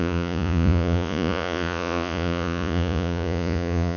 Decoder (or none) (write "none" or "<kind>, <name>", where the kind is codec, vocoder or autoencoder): vocoder, Vocos